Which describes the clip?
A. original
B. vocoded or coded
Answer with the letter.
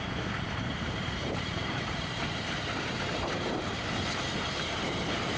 B